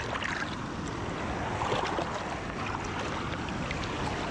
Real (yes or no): yes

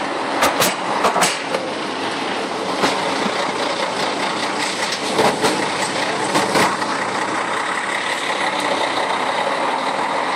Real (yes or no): yes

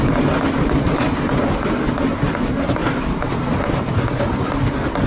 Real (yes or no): yes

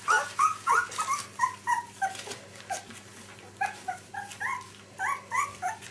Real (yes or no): yes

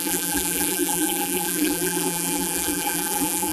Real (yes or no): no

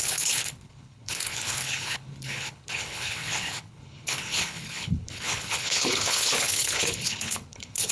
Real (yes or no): no